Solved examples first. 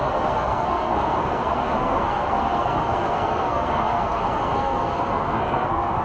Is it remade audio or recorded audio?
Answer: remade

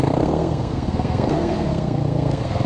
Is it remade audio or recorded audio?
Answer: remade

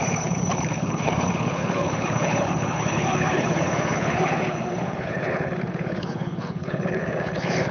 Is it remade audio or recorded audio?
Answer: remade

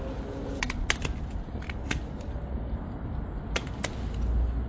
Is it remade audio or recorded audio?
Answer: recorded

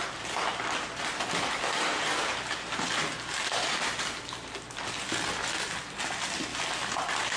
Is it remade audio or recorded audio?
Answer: recorded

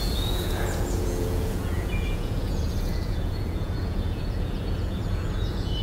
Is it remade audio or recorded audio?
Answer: remade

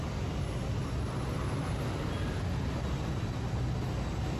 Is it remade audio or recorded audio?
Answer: recorded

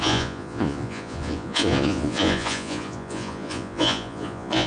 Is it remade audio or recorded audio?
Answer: remade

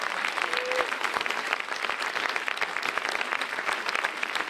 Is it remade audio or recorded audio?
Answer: recorded